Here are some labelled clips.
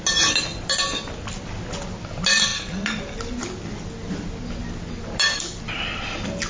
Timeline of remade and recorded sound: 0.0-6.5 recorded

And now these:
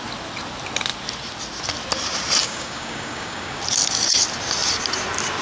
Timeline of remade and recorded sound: 0.0-2.4 recorded; 2.4-3.6 remade; 3.6-5.4 recorded

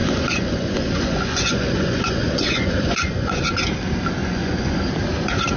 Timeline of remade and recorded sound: 0.0-3.4 remade; 3.4-4.2 recorded; 4.2-4.8 remade; 4.8-5.6 recorded

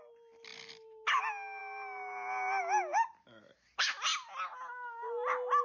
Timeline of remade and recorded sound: 0.0-5.6 recorded

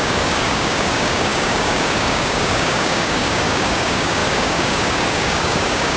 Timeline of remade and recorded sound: 0.0-6.0 remade

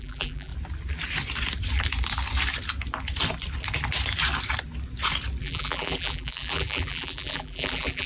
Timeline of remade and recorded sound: 0.0-0.5 remade; 0.5-5.4 recorded; 5.4-8.1 remade

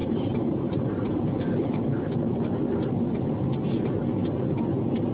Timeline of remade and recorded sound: 0.0-1.2 remade; 1.2-5.1 recorded

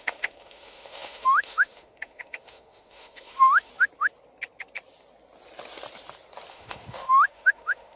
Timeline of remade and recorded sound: 0.0-3.7 remade; 3.7-6.5 recorded; 6.5-8.0 remade